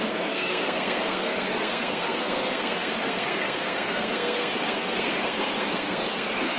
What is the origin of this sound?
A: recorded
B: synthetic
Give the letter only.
B